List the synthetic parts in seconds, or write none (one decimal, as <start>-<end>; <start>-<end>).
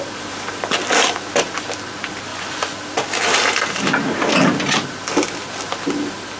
2.3-2.8